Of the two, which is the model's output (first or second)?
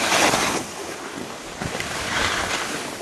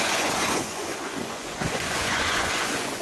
second